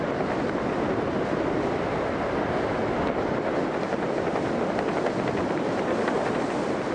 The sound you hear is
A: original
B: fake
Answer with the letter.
A